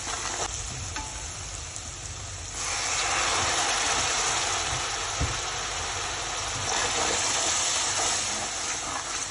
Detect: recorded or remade recorded